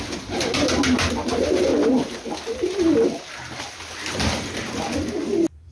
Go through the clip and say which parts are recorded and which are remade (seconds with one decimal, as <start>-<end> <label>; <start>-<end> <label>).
0.0-5.7 recorded